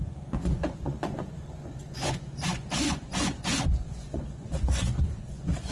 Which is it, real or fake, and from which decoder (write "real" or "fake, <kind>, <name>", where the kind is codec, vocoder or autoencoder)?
fake, vocoder, Vocos